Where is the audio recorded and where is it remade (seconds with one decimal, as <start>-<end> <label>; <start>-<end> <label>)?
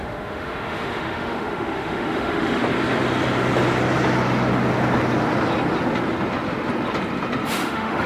0.0-2.6 remade; 2.6-7.5 recorded; 7.5-8.1 remade